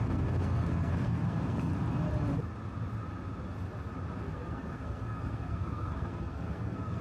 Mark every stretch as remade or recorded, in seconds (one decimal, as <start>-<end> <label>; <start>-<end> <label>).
0.0-1.7 remade; 1.7-4.2 recorded; 4.2-7.0 remade

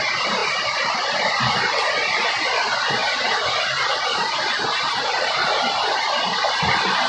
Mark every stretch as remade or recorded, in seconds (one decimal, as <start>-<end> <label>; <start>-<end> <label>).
0.0-0.4 recorded; 0.4-1.4 remade; 1.4-3.0 recorded; 3.0-5.6 remade; 5.6-7.1 recorded

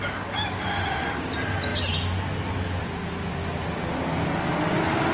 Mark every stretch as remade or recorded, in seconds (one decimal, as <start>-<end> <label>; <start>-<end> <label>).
0.0-5.1 recorded

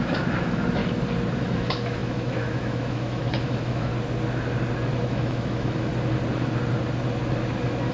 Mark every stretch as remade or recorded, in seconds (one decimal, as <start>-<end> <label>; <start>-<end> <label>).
0.0-0.8 remade; 0.8-1.4 recorded; 1.4-3.9 remade; 3.9-5.1 recorded; 5.1-5.9 remade; 5.9-7.9 recorded

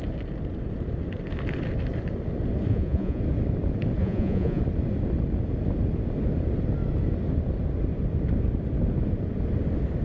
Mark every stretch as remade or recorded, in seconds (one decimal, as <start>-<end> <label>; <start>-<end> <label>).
0.0-2.7 recorded; 2.7-3.2 remade; 3.2-4.0 recorded; 4.0-4.6 remade; 4.6-10.0 recorded

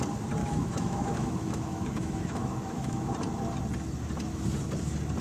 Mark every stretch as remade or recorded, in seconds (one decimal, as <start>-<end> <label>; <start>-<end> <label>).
0.0-0.4 recorded; 0.4-3.1 remade; 3.1-5.2 recorded

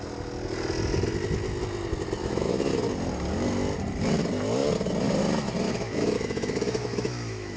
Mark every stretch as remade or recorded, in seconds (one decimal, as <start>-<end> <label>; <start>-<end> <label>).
0.0-2.2 recorded; 2.2-2.7 remade; 2.7-5.7 recorded; 5.7-7.6 remade

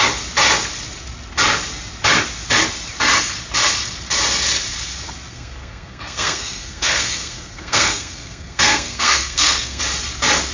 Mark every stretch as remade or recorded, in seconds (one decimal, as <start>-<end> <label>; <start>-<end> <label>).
0.0-5.3 recorded; 5.3-9.8 remade; 9.8-10.5 recorded